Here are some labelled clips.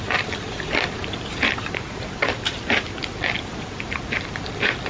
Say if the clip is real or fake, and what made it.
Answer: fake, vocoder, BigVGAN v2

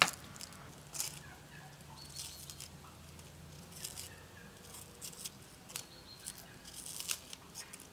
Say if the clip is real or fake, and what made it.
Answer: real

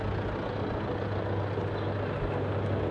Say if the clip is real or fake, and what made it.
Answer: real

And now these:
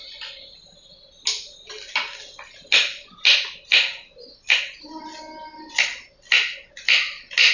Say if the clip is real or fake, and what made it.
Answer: real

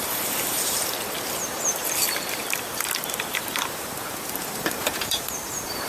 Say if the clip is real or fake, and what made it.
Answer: fake, vocoder, BigVGAN v2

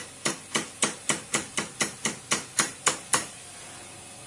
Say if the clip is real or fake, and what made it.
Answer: real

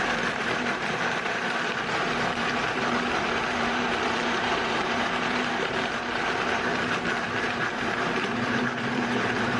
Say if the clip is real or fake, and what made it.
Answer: fake, vocoder, BigVGAN v2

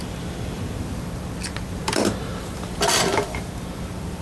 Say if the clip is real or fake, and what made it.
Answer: fake, vocoder, BigVGAN v2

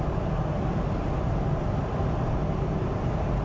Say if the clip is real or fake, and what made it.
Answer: real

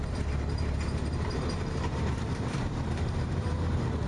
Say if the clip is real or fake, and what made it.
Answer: fake, vocoder, BigVGAN v2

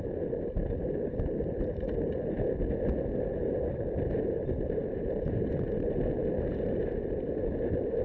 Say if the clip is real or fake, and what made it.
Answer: real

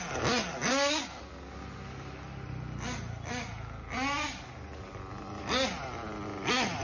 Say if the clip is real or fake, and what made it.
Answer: real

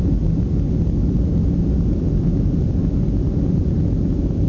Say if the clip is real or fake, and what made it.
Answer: real